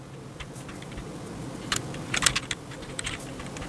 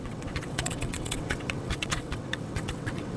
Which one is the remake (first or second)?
second